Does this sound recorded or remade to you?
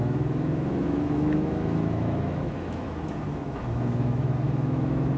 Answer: remade